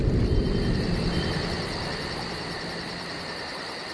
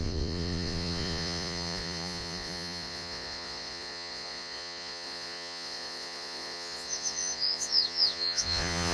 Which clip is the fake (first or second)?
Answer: second